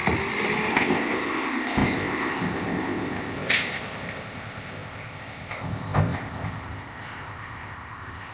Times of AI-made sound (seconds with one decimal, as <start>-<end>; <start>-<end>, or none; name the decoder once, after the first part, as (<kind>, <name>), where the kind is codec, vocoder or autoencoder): 0.7-8.3 (codec, ZipCodec)